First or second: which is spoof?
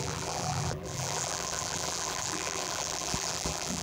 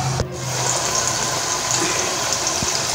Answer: first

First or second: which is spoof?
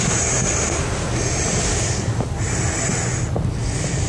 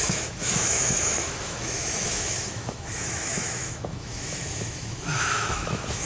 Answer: second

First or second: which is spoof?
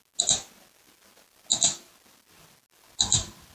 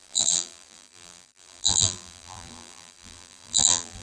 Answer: second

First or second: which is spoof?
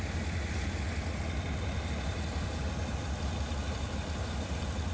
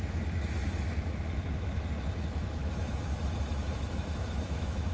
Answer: second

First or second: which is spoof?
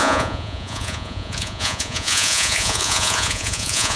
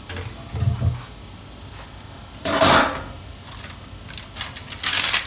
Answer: first